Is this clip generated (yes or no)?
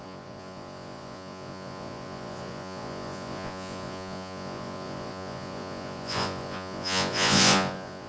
yes